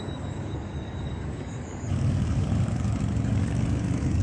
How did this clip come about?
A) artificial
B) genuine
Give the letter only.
A